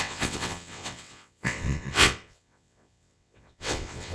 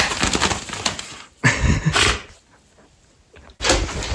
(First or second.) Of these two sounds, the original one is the second